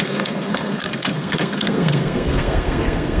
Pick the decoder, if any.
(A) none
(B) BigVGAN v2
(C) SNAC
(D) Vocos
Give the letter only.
C